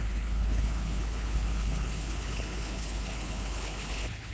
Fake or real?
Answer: fake